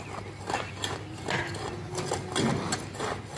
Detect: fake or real real